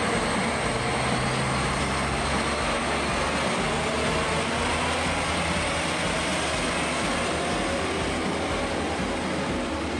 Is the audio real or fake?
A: real